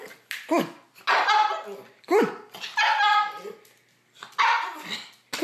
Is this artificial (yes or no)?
no